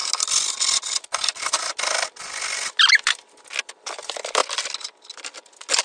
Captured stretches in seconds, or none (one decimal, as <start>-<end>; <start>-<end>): 0.0-5.8